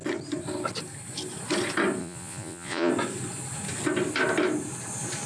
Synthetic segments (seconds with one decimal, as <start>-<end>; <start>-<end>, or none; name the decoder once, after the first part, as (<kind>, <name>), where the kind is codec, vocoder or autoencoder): 2.0-2.9 (vocoder, Vocos)